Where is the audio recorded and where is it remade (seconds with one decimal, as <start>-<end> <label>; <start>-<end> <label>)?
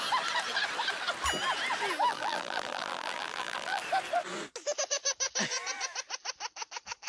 0.0-2.1 recorded; 2.1-3.8 remade; 3.8-7.1 recorded